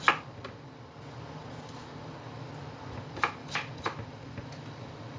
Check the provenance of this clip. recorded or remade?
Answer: recorded